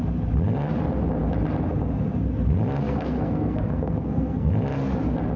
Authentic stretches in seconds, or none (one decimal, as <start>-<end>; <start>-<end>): 0.0-2.8; 4.5-5.4